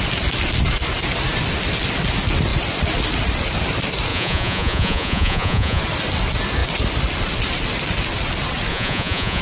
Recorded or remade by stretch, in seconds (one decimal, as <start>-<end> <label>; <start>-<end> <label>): 0.0-4.1 recorded; 4.1-5.8 remade; 5.8-8.7 recorded; 8.7-9.4 remade